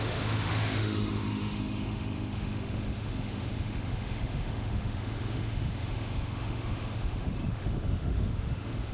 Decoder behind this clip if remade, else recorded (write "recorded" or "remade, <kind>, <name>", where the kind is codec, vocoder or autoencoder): remade, autoencoder, DAC-VAE